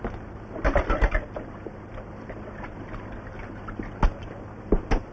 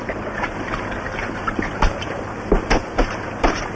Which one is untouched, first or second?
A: first